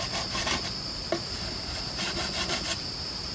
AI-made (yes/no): no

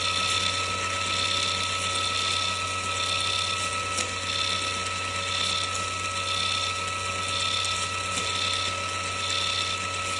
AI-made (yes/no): no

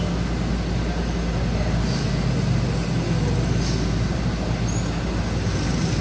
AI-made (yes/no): no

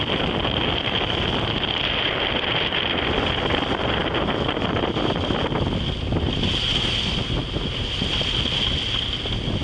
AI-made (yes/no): no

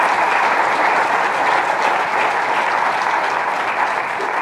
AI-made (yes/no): no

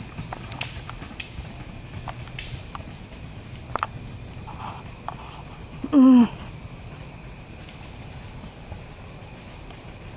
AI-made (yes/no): no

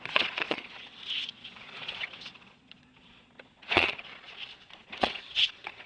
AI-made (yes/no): yes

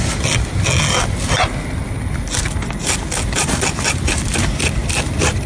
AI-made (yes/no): no